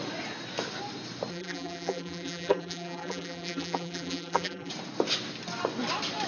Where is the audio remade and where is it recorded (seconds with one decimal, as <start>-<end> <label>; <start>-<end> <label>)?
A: 0.0-1.3 recorded; 1.3-4.7 remade; 4.7-6.3 recorded